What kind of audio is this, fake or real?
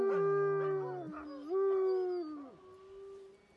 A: real